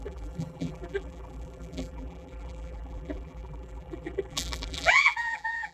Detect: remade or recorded remade